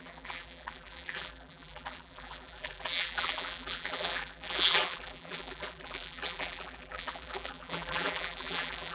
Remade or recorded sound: remade